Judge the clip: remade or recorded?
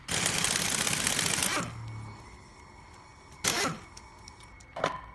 recorded